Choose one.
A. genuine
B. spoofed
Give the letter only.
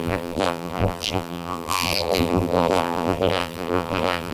B